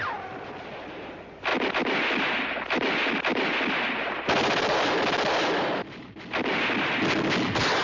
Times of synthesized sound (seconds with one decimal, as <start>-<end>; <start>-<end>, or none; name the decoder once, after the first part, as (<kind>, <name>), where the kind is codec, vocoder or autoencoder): 1.5-6.2 (vocoder, BigVGAN v2)